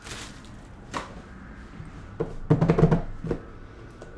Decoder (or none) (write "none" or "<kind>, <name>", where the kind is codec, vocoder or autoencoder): none